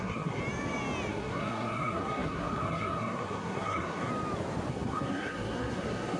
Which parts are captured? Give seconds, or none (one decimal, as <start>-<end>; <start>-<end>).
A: 0.4-1.1; 4.1-4.7